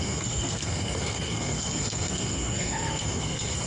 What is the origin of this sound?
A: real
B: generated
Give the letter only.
B